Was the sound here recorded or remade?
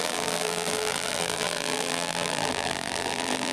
remade